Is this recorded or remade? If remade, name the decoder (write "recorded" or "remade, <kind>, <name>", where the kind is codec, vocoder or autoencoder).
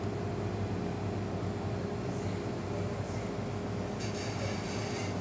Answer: recorded